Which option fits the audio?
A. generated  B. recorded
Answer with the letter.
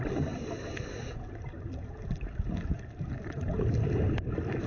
B